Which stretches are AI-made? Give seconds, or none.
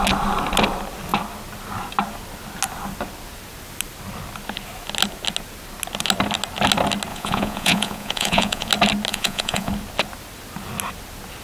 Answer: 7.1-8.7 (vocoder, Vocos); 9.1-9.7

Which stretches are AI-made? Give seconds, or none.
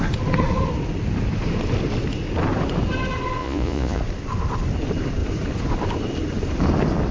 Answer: 3.4-4.0 (vocoder, Vocos)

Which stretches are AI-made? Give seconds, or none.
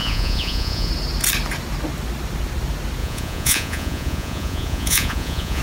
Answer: 0.0-0.9 (vocoder, Vocos); 3.0-5.6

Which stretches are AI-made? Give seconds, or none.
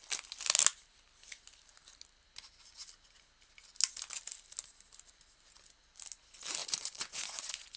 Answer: 6.6-7.8 (vocoder, Vocos)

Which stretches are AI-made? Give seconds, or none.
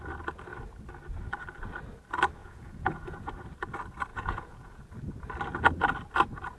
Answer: 2.4-3.3 (vocoder, Vocos); 4.1-4.8